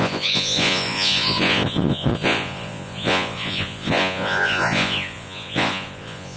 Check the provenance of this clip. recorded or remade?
remade